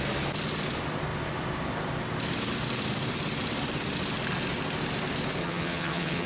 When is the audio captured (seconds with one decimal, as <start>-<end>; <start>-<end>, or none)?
0.0-5.4